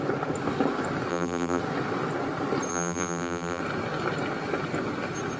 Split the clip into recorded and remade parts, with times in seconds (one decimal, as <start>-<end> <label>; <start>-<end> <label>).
0.0-1.1 recorded; 1.1-1.6 remade; 1.6-2.7 recorded; 2.7-3.6 remade; 3.6-5.4 recorded